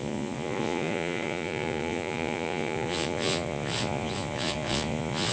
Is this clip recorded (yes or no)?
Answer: no